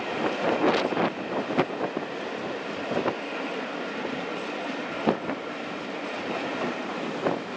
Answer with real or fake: real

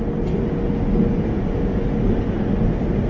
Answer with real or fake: real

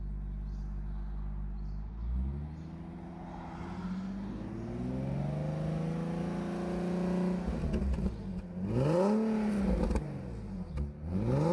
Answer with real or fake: real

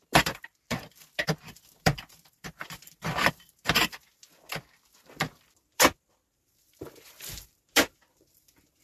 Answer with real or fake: fake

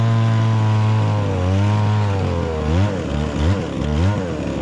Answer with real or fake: real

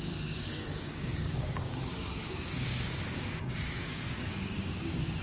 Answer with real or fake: fake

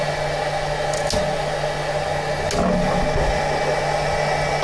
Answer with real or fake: real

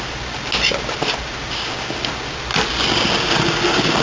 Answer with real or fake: real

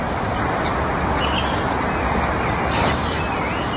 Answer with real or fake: real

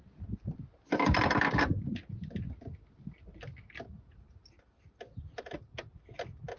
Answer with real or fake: real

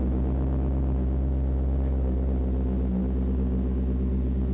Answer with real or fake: real